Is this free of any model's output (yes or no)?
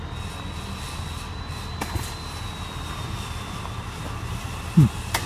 yes